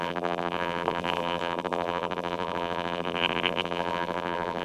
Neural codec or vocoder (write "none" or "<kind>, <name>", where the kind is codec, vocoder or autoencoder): vocoder, BigVGAN v2